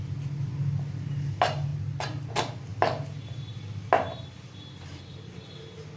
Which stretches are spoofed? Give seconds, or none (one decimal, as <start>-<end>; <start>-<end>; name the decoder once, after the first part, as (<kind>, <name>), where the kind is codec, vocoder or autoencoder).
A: none